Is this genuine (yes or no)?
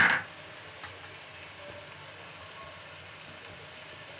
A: yes